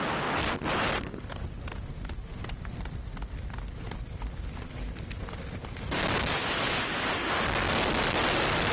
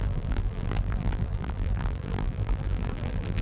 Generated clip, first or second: second